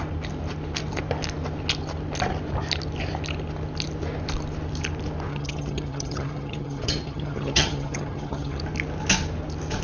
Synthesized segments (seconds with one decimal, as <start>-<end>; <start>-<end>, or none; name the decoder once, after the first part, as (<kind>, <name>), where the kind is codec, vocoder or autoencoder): 5.3-8.6 (vocoder, HiFi-GAN)